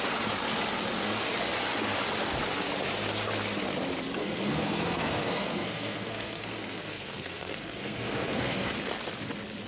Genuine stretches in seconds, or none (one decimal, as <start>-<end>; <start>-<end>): 0.0-4.2; 8.7-9.7